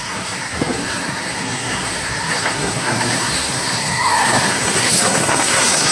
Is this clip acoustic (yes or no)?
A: no